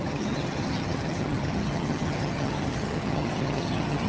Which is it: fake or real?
fake